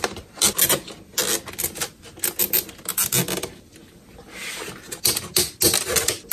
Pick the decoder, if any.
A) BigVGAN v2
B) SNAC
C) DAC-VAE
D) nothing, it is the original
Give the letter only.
D